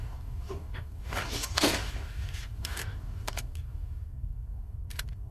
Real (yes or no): no